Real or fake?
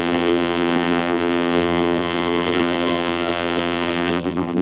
fake